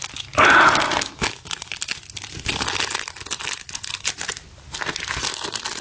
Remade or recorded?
recorded